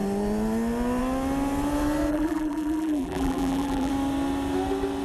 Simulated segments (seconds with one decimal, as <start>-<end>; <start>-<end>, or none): 2.1-3.9